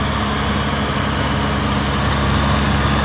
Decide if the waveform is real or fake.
real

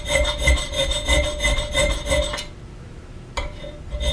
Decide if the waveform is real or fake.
real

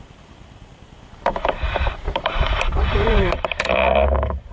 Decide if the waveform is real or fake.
fake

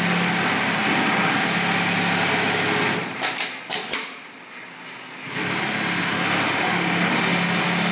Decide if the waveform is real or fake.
real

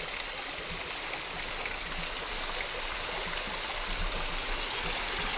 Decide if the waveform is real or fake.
real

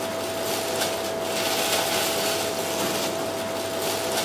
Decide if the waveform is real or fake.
real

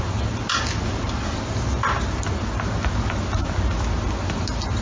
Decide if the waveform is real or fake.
real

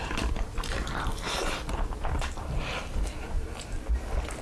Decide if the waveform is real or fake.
real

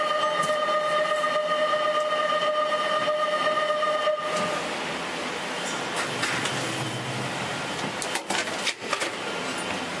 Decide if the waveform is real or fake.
real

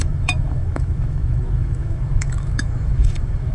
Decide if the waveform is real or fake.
fake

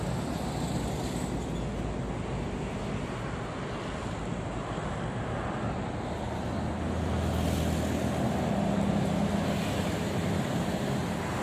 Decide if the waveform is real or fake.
real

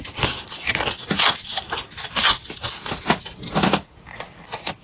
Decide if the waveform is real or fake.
real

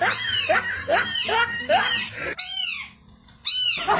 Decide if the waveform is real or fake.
real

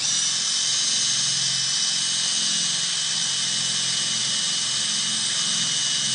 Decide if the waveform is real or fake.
real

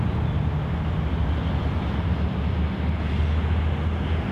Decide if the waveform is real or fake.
real